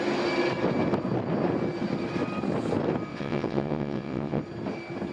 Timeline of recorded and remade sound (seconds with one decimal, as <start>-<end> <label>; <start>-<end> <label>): 0.0-3.1 recorded; 3.1-4.4 remade; 4.4-5.1 recorded